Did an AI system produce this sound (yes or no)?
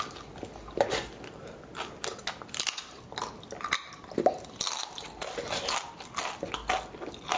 no